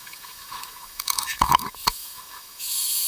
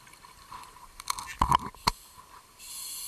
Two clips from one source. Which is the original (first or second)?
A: second